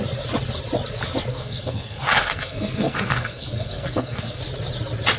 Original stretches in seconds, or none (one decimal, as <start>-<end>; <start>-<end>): 0.0-1.3; 4.4-5.2